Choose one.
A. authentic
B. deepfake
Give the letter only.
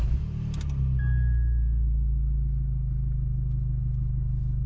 A